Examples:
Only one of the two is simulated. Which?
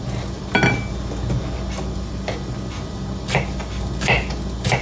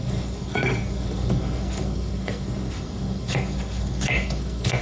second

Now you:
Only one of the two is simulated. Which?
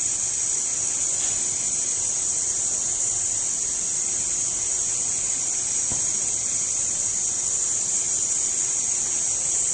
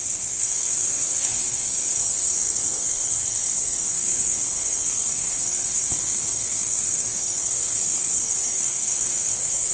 second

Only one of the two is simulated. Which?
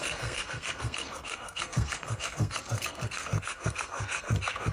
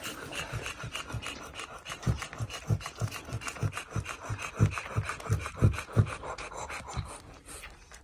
first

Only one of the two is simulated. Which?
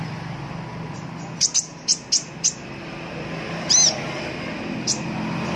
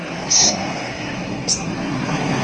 second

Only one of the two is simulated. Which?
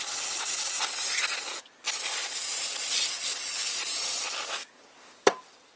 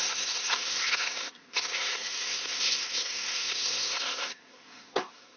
second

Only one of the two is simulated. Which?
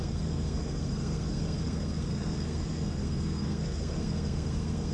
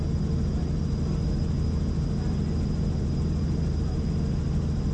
first